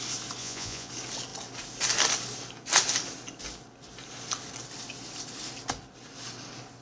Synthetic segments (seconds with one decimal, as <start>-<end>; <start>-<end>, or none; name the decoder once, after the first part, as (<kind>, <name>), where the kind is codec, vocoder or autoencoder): 0.4-0.9 (vocoder, Vocos)